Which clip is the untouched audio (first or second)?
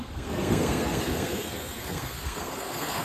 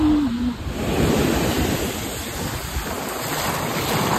second